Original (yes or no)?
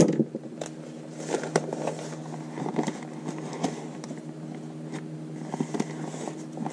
yes